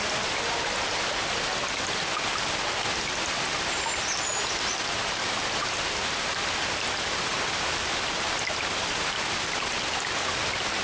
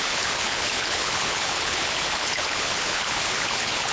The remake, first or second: second